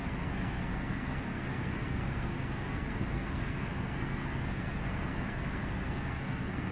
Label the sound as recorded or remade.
remade